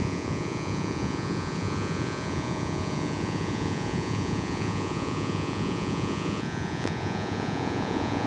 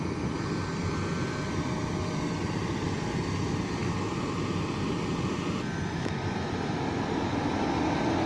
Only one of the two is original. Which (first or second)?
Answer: second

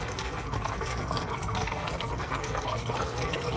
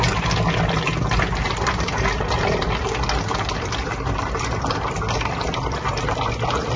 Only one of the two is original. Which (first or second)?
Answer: second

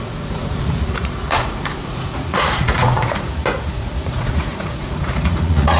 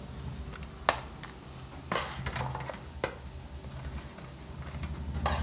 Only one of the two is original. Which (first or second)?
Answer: second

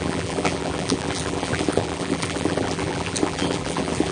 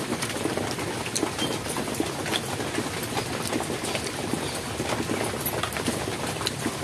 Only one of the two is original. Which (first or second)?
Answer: second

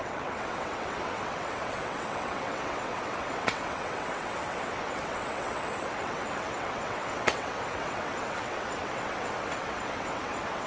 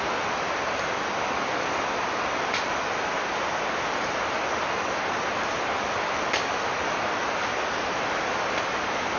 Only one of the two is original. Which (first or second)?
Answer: second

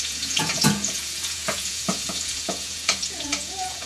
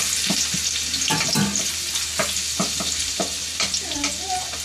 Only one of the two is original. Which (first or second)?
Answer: second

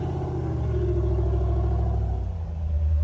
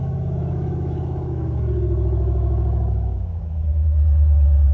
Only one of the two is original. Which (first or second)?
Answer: first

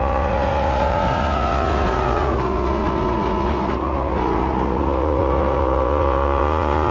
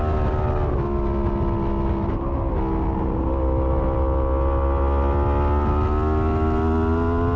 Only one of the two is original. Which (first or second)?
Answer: second